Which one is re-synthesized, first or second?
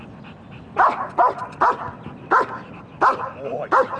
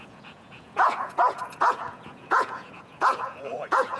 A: second